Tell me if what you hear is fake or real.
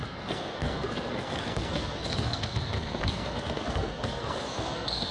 fake